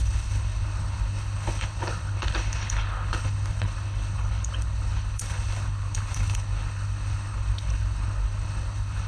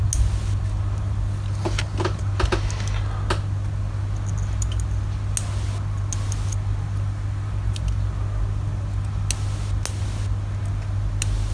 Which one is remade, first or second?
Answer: first